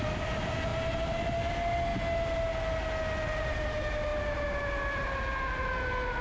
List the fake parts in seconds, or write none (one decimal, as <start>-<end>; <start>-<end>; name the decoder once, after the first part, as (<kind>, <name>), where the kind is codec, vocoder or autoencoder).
none